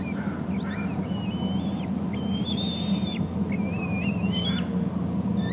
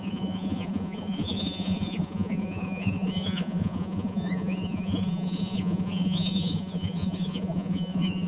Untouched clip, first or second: first